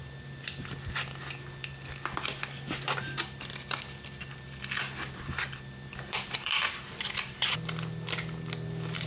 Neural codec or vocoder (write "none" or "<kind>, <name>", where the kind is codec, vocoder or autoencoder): vocoder, BigVGAN v2